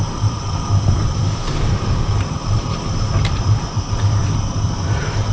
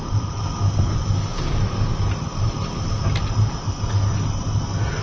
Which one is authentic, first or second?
second